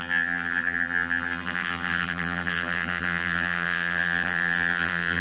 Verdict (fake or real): fake